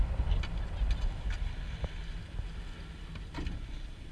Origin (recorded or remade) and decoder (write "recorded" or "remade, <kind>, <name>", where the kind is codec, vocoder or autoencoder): recorded